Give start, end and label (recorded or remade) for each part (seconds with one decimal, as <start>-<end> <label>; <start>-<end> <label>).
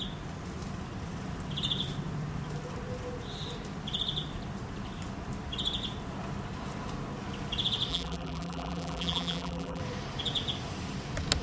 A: 0.0-7.9 recorded; 7.9-9.8 remade; 9.8-11.4 recorded